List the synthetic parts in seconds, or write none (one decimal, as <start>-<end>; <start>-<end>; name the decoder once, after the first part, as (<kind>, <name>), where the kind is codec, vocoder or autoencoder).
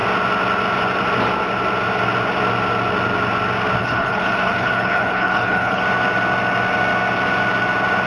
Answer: 3.8-5.8 (codec, HILCodec)